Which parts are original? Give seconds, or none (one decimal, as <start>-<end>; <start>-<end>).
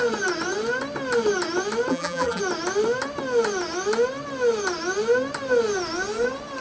0.0-1.9; 2.4-6.6